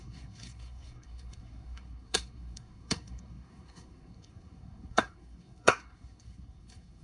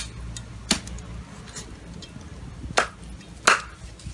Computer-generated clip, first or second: first